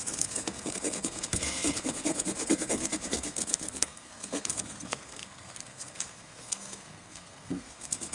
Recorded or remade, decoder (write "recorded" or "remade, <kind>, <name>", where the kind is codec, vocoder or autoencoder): remade, codec, SNAC